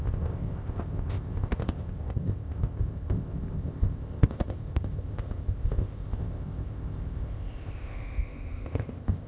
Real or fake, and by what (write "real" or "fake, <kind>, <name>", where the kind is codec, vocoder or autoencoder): fake, codec, ZipCodec